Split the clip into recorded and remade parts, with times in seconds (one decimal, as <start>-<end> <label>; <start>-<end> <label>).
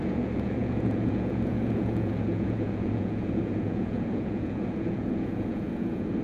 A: 0.0-6.2 remade